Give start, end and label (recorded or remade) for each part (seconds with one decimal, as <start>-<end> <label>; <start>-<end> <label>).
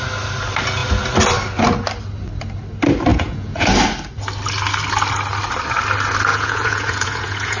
0.0-3.1 recorded; 3.1-3.7 remade; 3.7-6.3 recorded; 6.3-7.6 remade